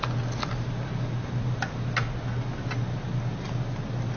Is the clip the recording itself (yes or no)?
yes